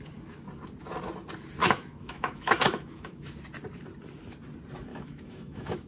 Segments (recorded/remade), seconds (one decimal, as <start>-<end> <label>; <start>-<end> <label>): 0.0-1.6 recorded; 1.6-3.2 remade; 3.2-4.9 recorded; 4.9-5.9 remade